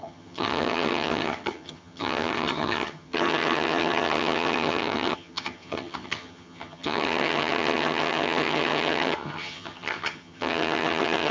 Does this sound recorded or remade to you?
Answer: remade